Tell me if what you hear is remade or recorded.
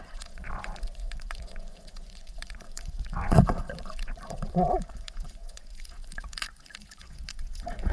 remade